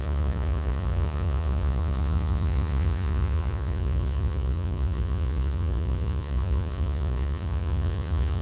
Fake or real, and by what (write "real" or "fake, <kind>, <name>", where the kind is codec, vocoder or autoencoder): fake, vocoder, Vocos